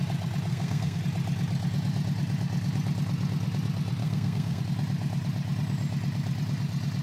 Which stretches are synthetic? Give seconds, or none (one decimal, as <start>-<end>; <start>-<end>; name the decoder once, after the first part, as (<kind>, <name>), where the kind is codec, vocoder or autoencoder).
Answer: 0.5-1.0 (codec, SNAC); 4.0-4.6